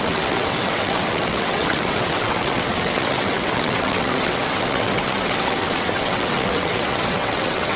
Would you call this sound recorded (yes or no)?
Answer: no